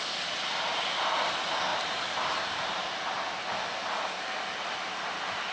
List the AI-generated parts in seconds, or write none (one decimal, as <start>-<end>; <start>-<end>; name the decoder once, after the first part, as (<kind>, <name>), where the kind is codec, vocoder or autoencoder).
1.7-3.5 (vocoder, BigVGAN v2)